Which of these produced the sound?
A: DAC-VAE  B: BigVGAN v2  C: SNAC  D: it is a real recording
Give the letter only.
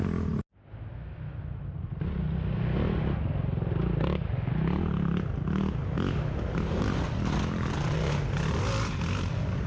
D